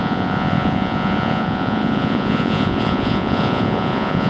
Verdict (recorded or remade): remade